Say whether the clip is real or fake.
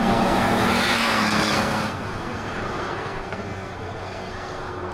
fake